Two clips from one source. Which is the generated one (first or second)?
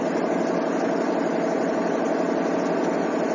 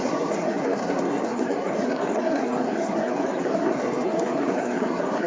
second